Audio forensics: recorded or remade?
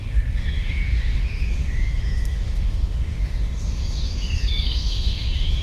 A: remade